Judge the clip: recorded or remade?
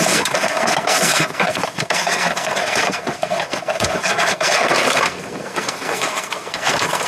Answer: remade